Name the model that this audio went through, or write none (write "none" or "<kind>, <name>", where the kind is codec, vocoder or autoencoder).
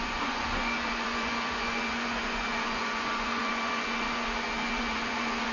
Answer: vocoder, Vocos